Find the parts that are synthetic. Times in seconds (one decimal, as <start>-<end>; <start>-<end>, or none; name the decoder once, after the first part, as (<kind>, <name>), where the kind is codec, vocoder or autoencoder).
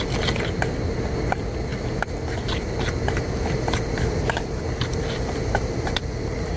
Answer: none